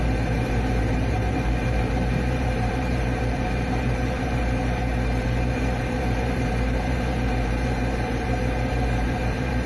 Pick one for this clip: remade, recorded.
remade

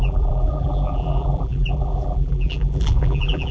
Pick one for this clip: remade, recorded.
remade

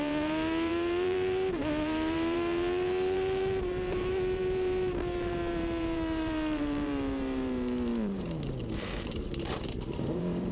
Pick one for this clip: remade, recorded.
remade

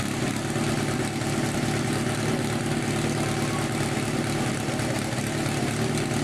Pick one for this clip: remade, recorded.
recorded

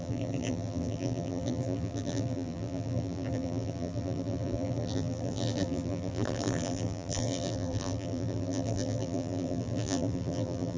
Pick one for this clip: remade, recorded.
remade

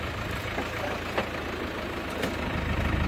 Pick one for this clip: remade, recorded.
remade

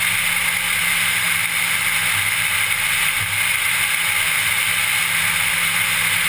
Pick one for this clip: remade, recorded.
recorded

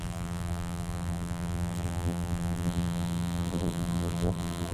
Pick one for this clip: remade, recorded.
remade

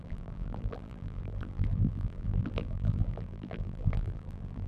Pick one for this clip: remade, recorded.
remade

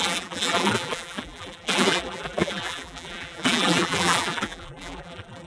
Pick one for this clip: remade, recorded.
remade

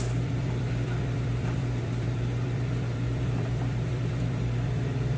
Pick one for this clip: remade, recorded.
remade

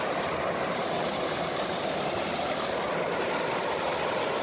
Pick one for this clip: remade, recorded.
remade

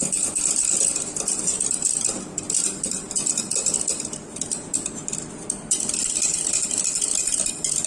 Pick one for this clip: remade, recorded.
recorded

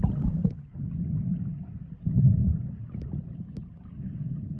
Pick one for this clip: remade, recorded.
remade